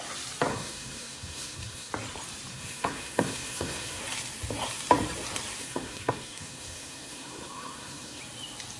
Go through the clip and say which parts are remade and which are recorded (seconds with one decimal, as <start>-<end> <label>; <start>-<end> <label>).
0.0-0.5 recorded; 0.5-1.9 remade; 1.9-2.5 recorded; 2.5-4.0 remade; 4.0-5.6 recorded; 5.6-8.2 remade; 8.2-8.8 recorded